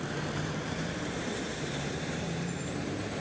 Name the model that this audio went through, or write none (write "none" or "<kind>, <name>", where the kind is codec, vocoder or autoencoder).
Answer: vocoder, BigVGAN v2